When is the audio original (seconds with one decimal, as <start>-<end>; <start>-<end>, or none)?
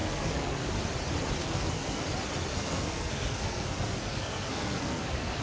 0.7-1.4; 2.0-2.5